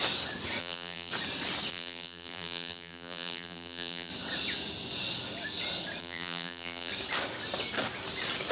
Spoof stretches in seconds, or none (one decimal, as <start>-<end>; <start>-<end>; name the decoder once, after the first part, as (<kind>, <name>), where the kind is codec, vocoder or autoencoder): 0.6-1.1 (vocoder, BigVGAN v2); 1.7-4.1; 6.0-6.9